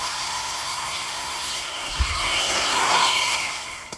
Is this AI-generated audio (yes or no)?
yes